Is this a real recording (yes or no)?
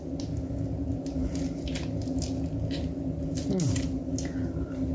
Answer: yes